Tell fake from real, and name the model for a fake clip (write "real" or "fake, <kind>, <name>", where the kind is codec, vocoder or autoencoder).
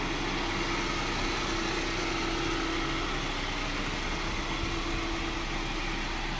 real